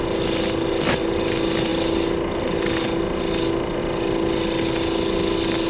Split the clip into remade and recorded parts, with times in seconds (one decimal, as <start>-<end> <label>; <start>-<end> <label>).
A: 0.0-5.7 recorded